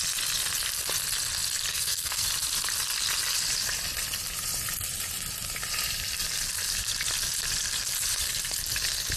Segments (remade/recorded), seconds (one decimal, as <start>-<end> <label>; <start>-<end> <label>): 0.0-1.7 recorded; 1.7-2.3 remade; 2.3-9.2 recorded